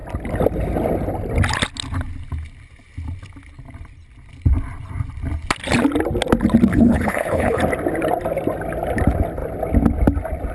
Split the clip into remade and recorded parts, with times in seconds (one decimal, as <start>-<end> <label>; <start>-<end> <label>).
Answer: 0.0-6.7 recorded; 6.7-7.6 remade; 7.6-10.5 recorded